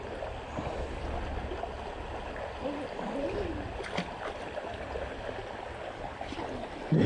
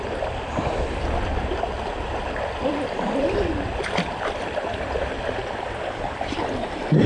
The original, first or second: first